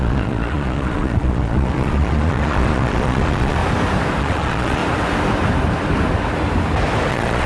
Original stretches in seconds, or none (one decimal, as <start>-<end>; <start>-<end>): 3.6-4.2; 4.8-7.1